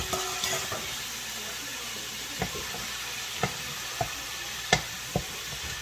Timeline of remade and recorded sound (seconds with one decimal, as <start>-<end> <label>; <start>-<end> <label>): 0.0-1.7 recorded; 1.7-5.2 remade; 5.2-5.8 recorded